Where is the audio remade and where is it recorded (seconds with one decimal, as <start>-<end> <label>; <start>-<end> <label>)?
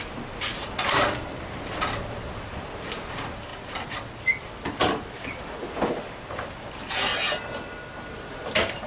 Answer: 0.0-7.1 remade; 7.1-8.3 recorded; 8.3-8.9 remade